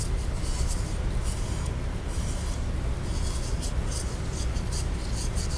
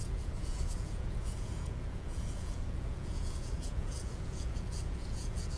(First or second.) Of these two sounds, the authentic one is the first